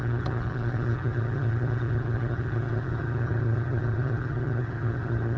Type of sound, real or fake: fake